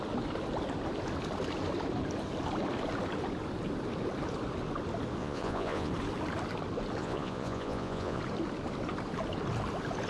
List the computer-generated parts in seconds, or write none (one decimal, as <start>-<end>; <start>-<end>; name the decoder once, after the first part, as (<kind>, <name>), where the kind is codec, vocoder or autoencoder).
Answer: 5.2-5.9 (vocoder, Vocos); 7.0-8.2